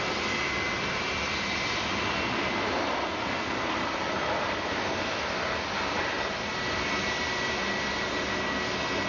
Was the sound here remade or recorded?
recorded